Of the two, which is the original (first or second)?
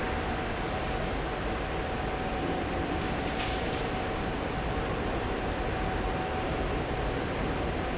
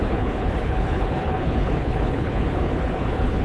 first